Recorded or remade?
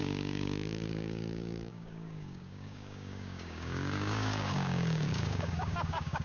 remade